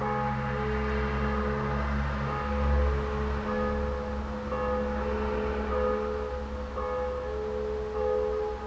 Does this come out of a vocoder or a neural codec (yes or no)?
no